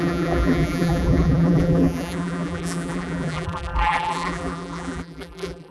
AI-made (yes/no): yes